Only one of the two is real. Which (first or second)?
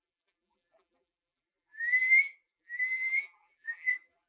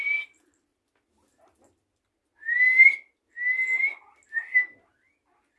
second